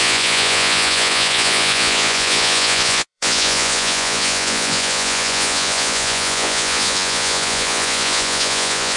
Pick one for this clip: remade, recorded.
remade